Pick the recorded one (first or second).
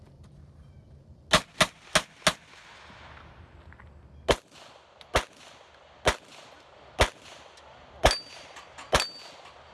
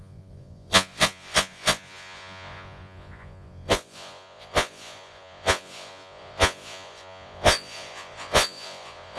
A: first